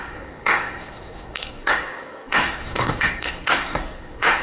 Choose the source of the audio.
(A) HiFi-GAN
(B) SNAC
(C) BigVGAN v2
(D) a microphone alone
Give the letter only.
B